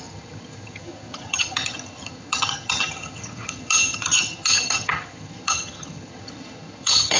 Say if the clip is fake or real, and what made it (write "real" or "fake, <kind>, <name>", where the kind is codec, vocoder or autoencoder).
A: fake, vocoder, HiFi-GAN